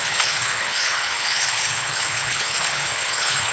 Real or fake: fake